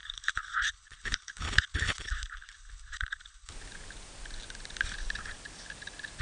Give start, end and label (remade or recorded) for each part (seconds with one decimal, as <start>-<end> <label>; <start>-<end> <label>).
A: 0.0-3.5 remade; 3.5-6.2 recorded